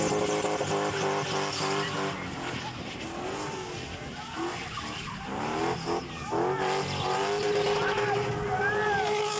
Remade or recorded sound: recorded